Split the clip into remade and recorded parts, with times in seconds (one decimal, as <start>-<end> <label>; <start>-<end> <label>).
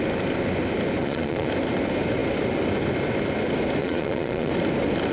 0.0-1.0 recorded; 1.0-1.5 remade; 1.5-3.8 recorded; 3.8-4.5 remade; 4.5-5.1 recorded